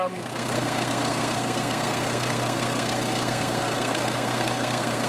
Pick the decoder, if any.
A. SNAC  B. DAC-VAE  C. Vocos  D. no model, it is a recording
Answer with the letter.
A